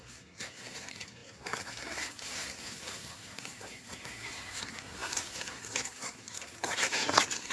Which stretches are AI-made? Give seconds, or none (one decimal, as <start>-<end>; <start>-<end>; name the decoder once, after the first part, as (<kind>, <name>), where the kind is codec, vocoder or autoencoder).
0.0-7.5 (codec, SNAC)

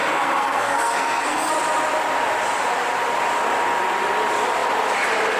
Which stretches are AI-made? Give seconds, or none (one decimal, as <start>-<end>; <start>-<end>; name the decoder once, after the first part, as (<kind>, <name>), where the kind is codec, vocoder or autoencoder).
0.0-1.5 (codec, SNAC)

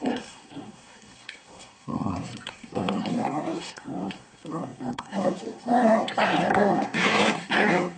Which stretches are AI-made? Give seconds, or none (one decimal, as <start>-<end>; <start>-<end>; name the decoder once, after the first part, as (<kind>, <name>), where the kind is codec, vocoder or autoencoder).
0.0-8.0 (codec, SNAC)

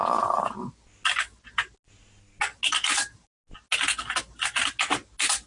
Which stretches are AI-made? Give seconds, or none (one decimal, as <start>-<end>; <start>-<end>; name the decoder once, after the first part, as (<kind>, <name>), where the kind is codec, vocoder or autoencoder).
none